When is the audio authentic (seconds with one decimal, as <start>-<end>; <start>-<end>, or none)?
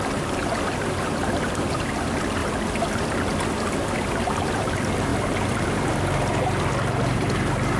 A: 0.4-1.2; 2.4-4.2